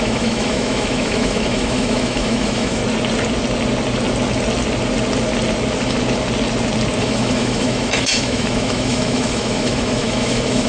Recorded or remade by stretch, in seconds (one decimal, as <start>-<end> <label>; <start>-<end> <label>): 0.0-2.8 remade; 2.8-7.0 recorded; 7.0-10.7 remade